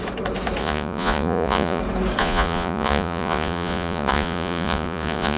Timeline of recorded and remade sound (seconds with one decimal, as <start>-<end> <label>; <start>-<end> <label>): 0.0-0.6 recorded; 0.6-1.8 remade; 1.8-2.2 recorded; 2.2-5.4 remade